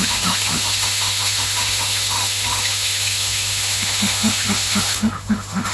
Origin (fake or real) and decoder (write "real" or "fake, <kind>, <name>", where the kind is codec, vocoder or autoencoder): fake, autoencoder, DAC-VAE